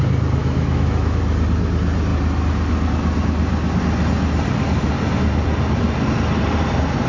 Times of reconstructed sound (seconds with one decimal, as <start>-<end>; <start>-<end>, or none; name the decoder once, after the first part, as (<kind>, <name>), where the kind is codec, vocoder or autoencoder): 0.4-1.2 (autoencoder, DAC-VAE)